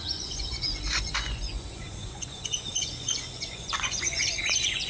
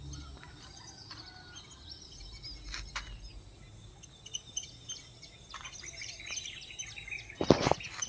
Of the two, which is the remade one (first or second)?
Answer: first